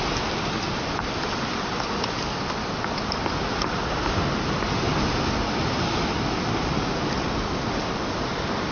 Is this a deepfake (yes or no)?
no